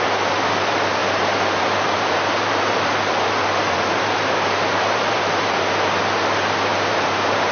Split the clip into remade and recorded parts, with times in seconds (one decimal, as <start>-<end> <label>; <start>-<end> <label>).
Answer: 0.0-1.0 recorded; 1.0-5.5 remade; 5.5-6.7 recorded; 6.7-7.5 remade